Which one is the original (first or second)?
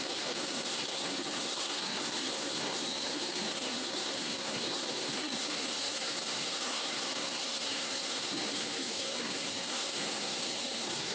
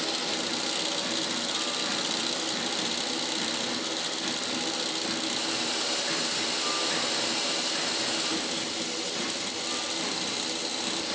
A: second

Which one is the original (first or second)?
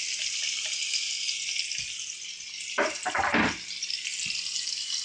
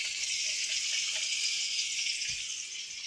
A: first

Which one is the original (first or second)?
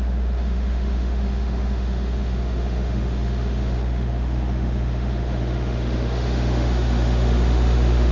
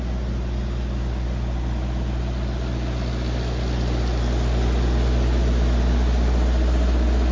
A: second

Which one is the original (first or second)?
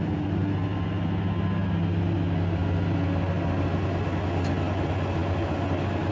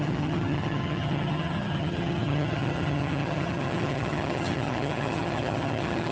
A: first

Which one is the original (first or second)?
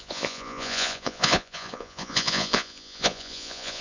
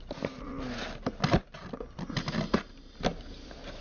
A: second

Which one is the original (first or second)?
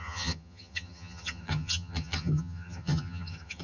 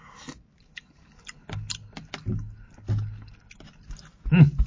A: second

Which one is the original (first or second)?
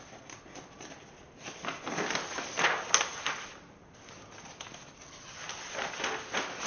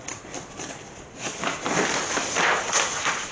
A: first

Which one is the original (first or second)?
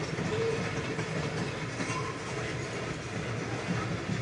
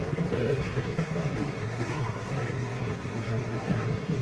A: first